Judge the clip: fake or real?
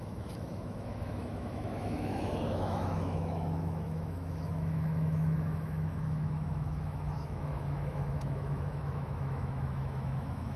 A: fake